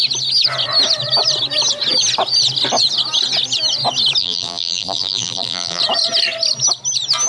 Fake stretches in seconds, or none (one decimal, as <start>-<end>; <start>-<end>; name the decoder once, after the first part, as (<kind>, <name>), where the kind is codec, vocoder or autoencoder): 4.2-5.8 (vocoder, BigVGAN v2)